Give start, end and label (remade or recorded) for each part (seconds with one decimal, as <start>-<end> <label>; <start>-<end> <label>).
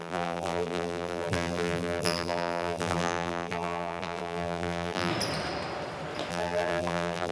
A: 0.0-5.1 remade; 5.1-6.3 recorded; 6.3-7.3 remade